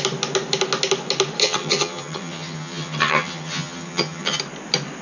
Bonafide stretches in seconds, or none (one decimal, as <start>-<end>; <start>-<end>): 0.0-1.4; 4.4-5.0